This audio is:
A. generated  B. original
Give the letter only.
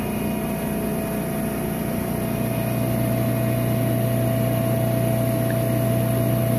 B